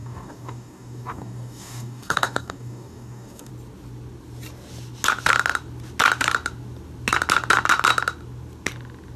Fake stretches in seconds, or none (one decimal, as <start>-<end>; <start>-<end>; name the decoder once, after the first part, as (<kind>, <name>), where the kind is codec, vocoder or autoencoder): 0.0-3.5 (codec, DAC)